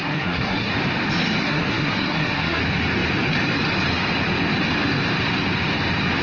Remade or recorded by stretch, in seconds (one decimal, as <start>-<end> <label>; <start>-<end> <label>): 0.0-0.7 remade; 0.7-1.4 recorded; 1.4-2.6 remade; 2.6-6.2 recorded